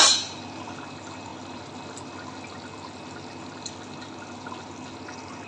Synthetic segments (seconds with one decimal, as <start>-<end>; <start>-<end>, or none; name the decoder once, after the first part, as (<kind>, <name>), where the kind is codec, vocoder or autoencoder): none